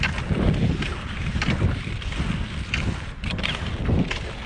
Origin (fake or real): real